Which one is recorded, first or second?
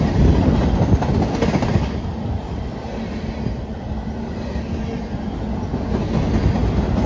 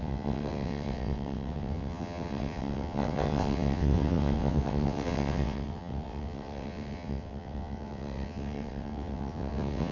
first